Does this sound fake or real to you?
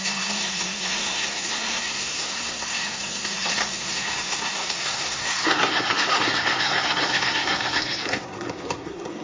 fake